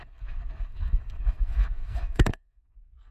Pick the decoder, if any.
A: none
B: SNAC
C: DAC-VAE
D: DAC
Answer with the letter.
B